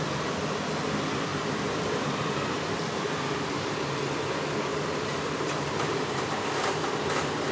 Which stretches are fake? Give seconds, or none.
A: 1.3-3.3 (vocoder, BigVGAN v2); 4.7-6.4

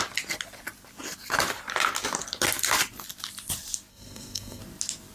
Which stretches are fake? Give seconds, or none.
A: 3.9-4.6 (codec, SNAC)